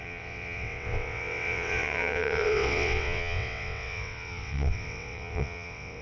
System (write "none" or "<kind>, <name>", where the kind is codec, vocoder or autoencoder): vocoder, WaveNeXt